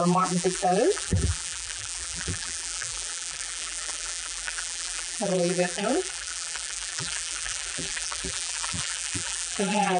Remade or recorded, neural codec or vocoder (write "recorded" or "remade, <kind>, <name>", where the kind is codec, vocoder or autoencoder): remade, vocoder, BigVGAN v2